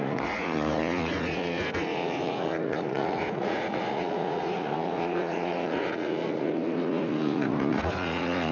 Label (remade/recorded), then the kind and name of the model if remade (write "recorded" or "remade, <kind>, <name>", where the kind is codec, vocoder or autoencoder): remade, vocoder, Vocos